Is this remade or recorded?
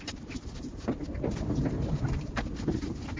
remade